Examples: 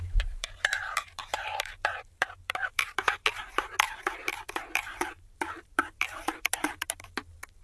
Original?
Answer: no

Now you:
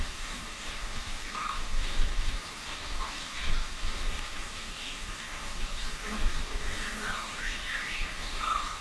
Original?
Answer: no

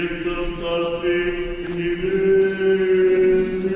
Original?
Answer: yes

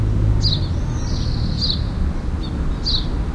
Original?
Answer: yes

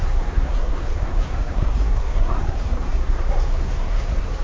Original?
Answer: no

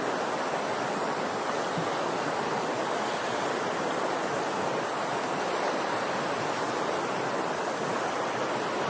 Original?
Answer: yes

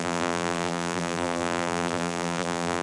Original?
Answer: no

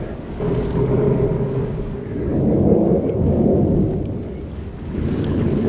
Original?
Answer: no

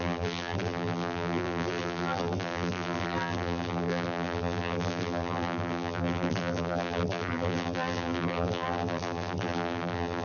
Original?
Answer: no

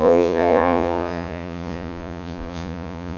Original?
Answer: no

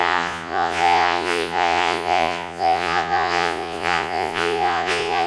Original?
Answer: no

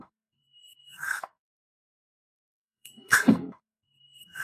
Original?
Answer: no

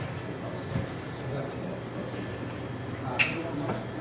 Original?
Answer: yes